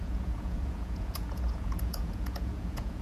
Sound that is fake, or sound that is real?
fake